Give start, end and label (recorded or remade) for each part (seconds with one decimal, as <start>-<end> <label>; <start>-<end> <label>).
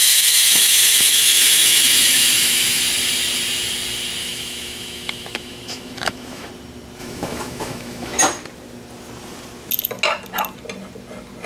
0.0-2.8 remade; 2.8-4.2 recorded; 4.2-6.5 remade; 6.5-7.0 recorded; 7.0-8.2 remade; 8.2-11.5 recorded